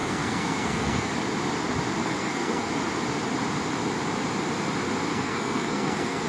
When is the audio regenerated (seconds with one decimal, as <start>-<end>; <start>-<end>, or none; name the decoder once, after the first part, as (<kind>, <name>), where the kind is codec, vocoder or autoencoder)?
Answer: 0.0-1.1 (codec, SNAC); 2.0-2.7; 5.1-6.3